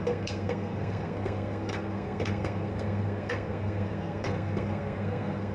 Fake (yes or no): yes